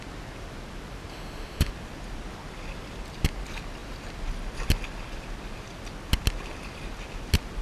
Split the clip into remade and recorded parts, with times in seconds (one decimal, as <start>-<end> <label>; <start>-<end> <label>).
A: 0.0-1.1 recorded; 1.1-1.7 remade; 1.7-7.6 recorded